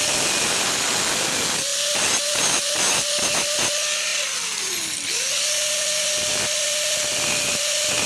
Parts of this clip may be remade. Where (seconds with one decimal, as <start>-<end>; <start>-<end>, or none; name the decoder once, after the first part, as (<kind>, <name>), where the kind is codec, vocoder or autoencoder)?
none